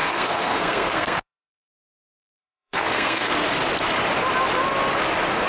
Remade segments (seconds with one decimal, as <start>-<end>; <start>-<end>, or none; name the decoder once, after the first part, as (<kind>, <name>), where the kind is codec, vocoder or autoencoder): 0.0-3.3 (codec, SNAC)